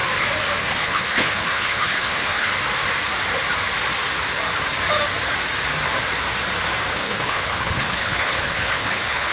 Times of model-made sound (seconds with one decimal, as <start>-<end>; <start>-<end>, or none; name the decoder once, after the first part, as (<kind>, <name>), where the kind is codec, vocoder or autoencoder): 0.6-2.5 (codec, HILCodec); 6.9-9.3